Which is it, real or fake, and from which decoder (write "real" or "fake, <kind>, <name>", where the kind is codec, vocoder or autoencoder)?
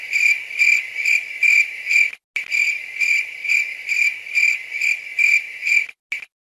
real